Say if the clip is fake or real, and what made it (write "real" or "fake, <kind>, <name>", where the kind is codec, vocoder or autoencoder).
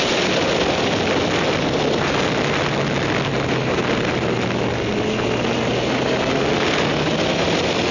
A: real